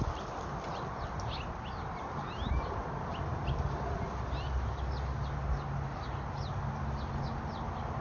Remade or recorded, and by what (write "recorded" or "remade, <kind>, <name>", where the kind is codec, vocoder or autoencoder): recorded